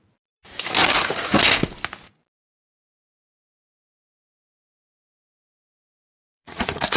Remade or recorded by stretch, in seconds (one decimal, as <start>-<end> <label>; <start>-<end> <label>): 0.0-0.8 recorded; 0.8-1.4 remade; 1.4-5.9 recorded; 5.9-7.0 remade